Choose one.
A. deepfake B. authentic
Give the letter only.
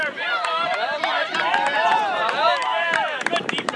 A